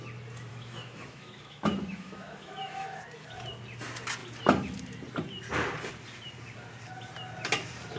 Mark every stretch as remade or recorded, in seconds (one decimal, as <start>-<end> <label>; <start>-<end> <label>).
0.0-0.5 recorded; 0.5-3.0 remade; 3.0-8.0 recorded